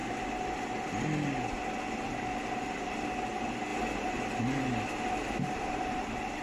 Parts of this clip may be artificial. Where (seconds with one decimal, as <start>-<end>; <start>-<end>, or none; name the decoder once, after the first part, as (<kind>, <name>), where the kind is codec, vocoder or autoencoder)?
none